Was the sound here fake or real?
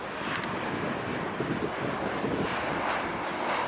real